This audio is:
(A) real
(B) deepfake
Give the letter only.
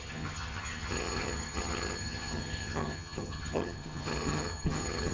B